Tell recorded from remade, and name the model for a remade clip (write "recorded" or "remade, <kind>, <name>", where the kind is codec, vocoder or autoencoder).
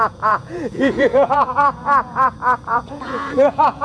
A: remade, vocoder, Vocos